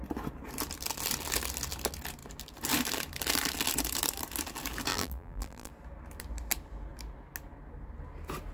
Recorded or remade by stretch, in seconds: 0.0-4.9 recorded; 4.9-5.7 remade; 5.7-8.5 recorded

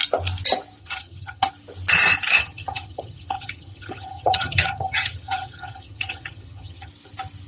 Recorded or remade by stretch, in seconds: 0.0-0.8 recorded; 0.8-1.5 remade; 1.5-2.4 recorded; 2.4-6.9 remade; 6.9-7.5 recorded

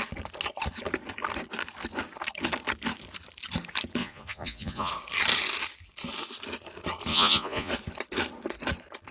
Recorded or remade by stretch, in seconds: 0.0-4.0 recorded; 4.0-4.9 remade; 4.9-7.1 recorded; 7.1-7.7 remade; 7.7-9.1 recorded

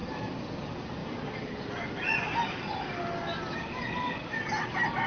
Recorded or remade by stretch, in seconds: 0.0-0.6 remade; 0.6-1.0 recorded; 1.0-4.1 remade; 4.1-5.1 recorded